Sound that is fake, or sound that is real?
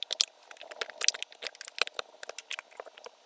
real